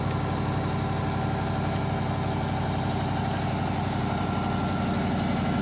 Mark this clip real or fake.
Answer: real